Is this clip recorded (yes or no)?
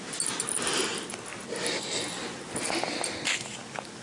yes